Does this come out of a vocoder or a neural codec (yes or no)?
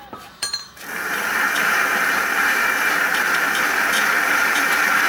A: yes